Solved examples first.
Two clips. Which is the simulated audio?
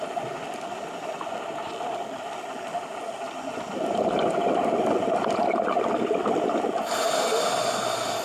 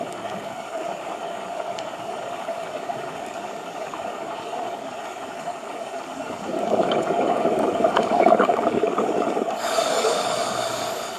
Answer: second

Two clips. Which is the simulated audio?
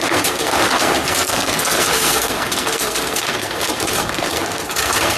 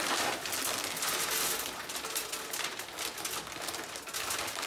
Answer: first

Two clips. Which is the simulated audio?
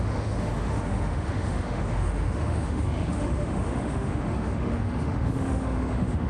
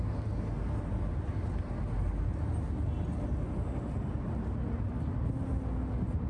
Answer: first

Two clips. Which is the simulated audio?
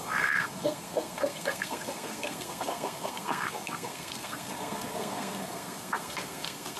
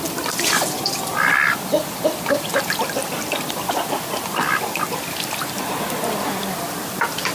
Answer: first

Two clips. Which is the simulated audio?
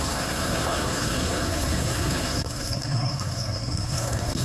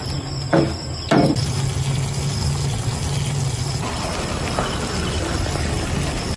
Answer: first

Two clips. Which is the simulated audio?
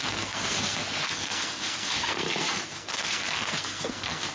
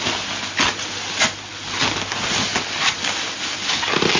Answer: first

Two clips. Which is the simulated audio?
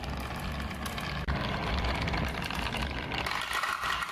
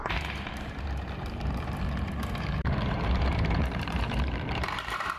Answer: second